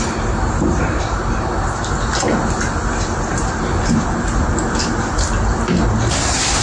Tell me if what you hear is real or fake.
fake